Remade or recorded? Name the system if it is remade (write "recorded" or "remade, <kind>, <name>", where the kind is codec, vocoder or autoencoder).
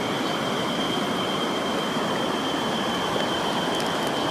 recorded